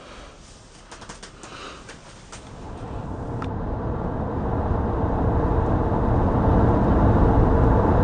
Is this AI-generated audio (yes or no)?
no